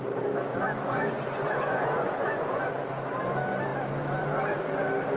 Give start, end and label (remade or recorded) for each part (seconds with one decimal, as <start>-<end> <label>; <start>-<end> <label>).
0.0-0.5 recorded; 0.5-2.7 remade; 2.7-5.2 recorded